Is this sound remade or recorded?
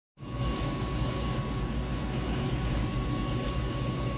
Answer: remade